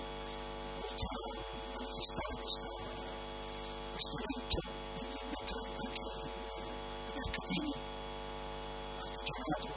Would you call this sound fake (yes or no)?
no